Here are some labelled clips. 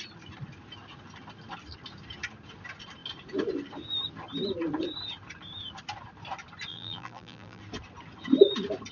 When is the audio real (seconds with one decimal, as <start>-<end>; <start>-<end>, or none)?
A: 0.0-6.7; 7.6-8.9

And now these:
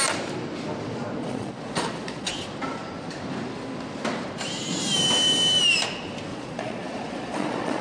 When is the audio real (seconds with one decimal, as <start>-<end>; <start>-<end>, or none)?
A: 0.0-1.2; 2.3-6.3

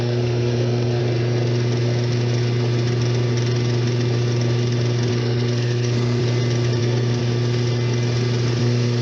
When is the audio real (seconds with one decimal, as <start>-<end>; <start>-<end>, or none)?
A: 1.0-5.1; 6.2-6.8; 7.2-8.6

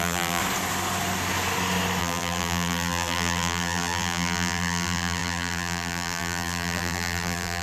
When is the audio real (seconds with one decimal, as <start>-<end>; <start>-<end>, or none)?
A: 0.4-2.0